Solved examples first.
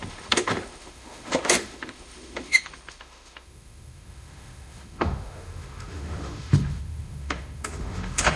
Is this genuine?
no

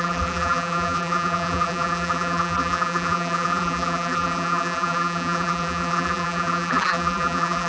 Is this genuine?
no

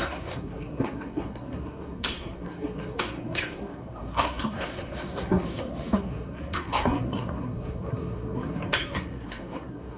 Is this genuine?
no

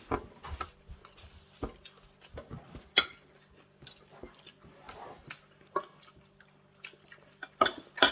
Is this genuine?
yes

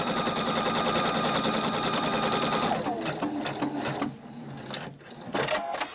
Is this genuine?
yes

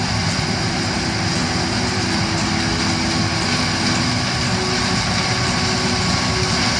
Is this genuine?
yes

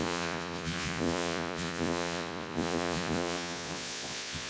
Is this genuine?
no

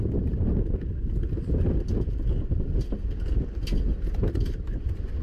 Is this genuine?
yes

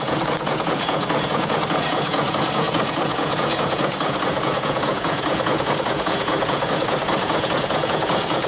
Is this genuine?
no